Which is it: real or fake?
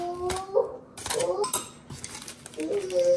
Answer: real